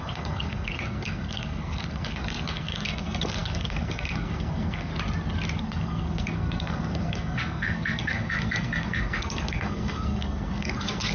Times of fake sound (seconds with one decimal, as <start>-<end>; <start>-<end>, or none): 0.0-4.9; 5.6-11.1